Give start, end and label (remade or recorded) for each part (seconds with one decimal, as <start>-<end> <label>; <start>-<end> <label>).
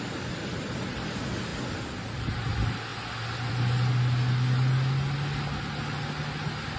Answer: 0.0-6.8 recorded